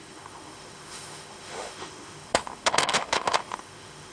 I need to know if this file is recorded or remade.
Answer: remade